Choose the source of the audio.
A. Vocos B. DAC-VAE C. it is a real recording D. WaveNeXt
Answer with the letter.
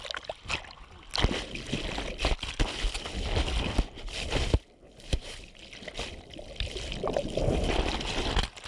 C